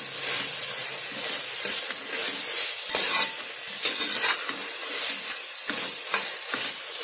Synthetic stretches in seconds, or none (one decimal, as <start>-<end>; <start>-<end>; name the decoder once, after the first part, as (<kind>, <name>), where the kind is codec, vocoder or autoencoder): none